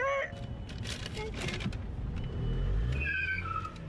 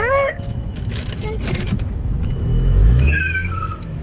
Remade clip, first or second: second